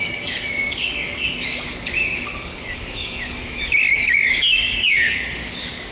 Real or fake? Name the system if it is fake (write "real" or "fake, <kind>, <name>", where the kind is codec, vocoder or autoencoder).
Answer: fake, codec, DAC